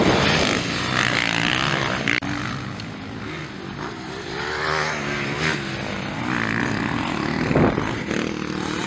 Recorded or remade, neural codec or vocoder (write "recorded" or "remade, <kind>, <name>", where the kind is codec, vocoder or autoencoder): recorded